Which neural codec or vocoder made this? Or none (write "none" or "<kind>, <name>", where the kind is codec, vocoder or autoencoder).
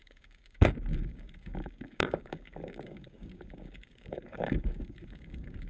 codec, DAC